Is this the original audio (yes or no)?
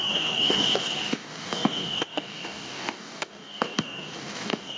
no